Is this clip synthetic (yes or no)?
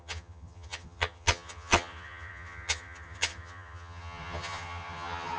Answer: yes